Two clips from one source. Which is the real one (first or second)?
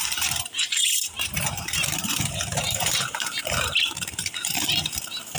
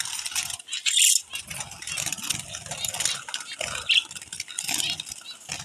second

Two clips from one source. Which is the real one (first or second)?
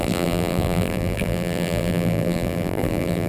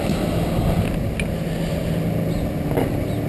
second